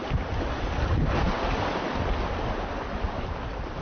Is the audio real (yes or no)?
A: yes